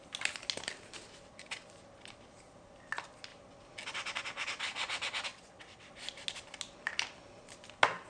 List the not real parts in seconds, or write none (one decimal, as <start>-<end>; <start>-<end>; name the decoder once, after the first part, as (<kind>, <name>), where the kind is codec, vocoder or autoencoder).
5.3-5.9 (vocoder, WaveNeXt)